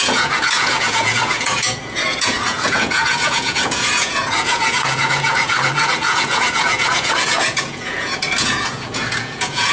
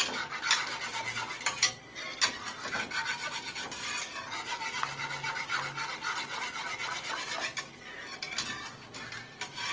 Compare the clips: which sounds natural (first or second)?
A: second